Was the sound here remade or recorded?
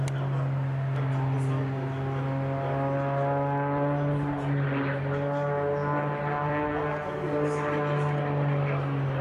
recorded